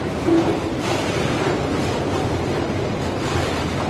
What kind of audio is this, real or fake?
real